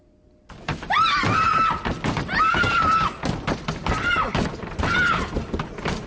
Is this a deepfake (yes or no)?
no